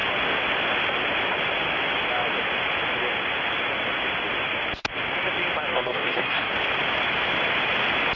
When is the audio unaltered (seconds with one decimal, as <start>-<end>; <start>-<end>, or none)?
0.0-5.7; 6.5-8.2